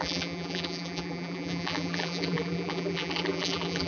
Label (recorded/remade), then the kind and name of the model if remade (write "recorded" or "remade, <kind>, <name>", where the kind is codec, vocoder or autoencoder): remade, vocoder, BigVGAN v2